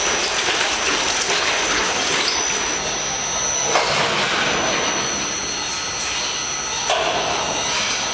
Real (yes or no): yes